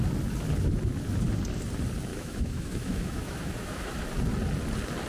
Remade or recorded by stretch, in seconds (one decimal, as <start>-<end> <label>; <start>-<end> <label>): 0.0-2.1 recorded; 2.1-4.1 remade; 4.1-5.1 recorded